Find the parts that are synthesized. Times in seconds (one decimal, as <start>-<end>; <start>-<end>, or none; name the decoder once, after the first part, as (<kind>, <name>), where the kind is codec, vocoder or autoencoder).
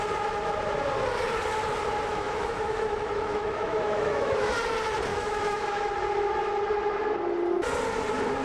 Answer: 2.1-4.5 (autoencoder, DAC-VAE); 5.1-5.9